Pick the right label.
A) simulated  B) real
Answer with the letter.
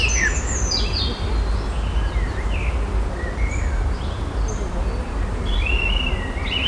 B